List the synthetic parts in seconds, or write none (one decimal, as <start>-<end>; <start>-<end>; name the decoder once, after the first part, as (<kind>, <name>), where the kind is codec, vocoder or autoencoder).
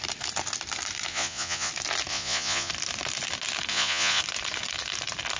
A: 1.1-1.7 (vocoder, Vocos); 2.1-2.7; 3.7-4.2